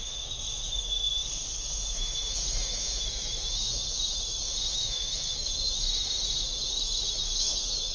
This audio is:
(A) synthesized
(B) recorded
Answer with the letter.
A